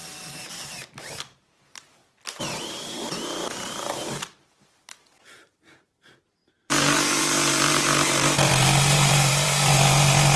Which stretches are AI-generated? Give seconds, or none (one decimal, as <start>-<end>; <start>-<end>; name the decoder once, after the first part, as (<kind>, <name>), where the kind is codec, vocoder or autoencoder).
0.5-2.0 (vocoder, BigVGAN v2); 2.6-10.4